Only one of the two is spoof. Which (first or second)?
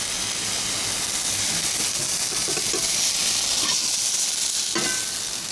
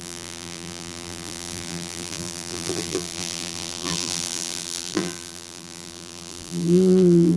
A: second